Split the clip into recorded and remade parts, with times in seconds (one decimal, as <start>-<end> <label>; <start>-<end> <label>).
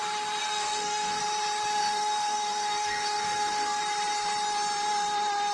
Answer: 0.0-0.4 recorded; 0.4-1.2 remade; 1.2-1.8 recorded; 1.8-3.8 remade; 3.8-5.5 recorded